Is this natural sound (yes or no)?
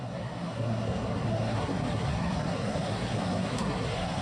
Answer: no